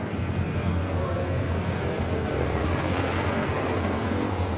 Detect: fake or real fake